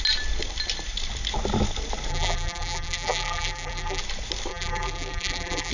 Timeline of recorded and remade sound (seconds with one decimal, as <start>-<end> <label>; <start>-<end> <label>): 0.0-2.1 recorded; 2.1-4.0 remade; 4.0-4.5 recorded; 4.5-5.7 remade